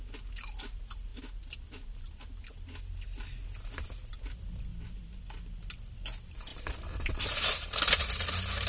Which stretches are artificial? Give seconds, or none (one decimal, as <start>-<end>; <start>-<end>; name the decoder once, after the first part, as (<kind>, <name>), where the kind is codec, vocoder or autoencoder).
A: 4.7-5.2 (vocoder, BigVGAN v2); 6.5-8.0